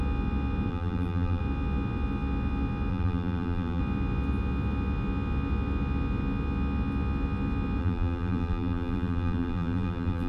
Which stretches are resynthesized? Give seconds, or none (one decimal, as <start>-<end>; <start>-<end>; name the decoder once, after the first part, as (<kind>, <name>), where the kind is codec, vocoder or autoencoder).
0.7-1.4 (vocoder, BigVGAN v2); 2.9-3.8; 7.8-10.3